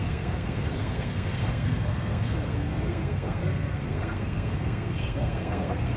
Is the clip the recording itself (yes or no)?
no